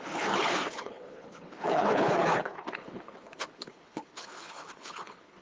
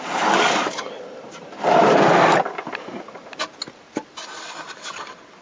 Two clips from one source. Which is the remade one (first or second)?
first